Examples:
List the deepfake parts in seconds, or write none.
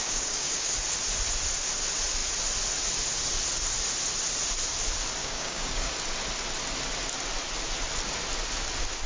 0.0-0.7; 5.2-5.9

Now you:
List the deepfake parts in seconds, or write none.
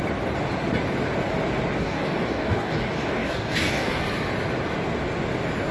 1.8-4.0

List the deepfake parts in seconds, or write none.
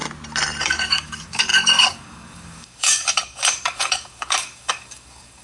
0.6-5.4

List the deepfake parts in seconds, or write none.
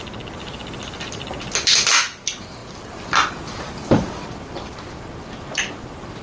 none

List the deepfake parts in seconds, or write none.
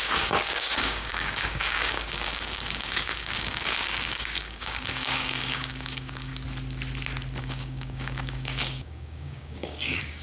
0.0-6.3; 7.4-10.2